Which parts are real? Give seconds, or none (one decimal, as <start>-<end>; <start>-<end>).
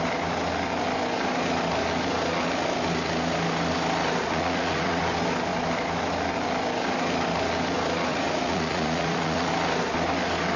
0.0-4.2; 5.0-8.1; 9.5-10.6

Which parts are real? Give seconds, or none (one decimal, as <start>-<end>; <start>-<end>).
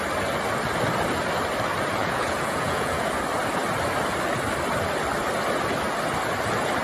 0.0-2.0; 3.1-6.8